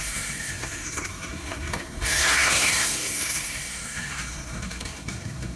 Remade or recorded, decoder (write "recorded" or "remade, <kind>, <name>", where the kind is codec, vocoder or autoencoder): remade, codec, SNAC